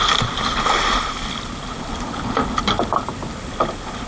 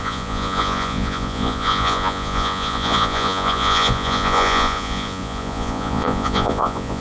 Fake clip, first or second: second